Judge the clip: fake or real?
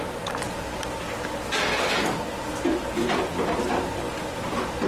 real